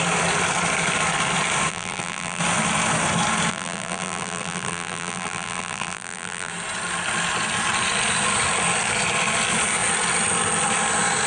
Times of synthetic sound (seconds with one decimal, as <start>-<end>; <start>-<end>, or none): 1.7-2.4; 3.5-6.5